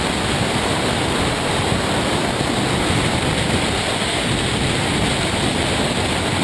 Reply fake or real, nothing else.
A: fake